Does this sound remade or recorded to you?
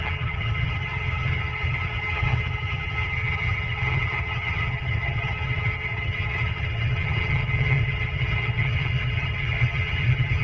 remade